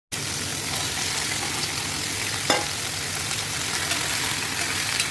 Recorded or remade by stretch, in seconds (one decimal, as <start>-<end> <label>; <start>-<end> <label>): 0.0-5.1 recorded